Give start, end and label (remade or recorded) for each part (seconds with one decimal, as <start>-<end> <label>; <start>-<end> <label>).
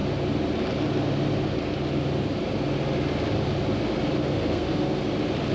0.0-4.2 recorded; 4.2-5.0 remade; 5.0-5.5 recorded